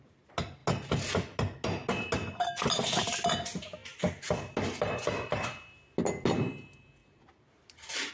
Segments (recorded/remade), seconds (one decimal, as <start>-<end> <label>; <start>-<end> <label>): 0.0-7.0 recorded; 7.0-8.1 remade